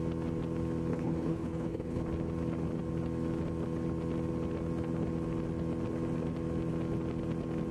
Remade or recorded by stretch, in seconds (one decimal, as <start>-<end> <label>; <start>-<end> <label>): 0.0-0.9 recorded; 0.9-2.0 remade; 2.0-7.7 recorded

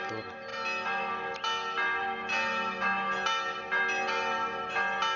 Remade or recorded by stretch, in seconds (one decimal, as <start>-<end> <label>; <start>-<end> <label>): 0.0-5.2 recorded

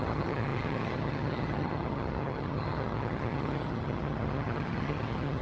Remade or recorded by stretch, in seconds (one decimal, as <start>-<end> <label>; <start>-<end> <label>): 0.0-5.4 remade

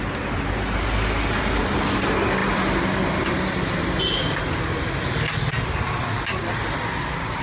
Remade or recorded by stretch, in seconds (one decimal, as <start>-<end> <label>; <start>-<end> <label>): 0.0-7.4 recorded